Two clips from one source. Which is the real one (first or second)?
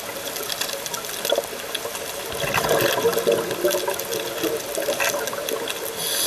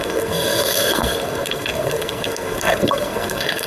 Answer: first